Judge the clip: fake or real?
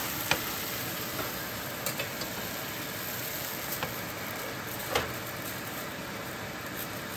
real